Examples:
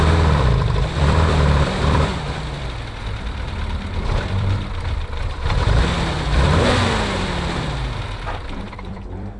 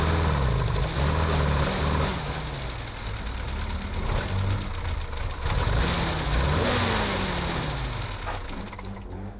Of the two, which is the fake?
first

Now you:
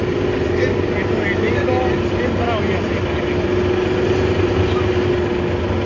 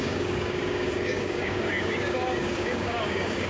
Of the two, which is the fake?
second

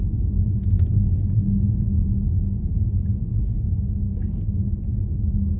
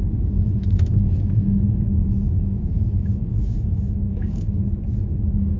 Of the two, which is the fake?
second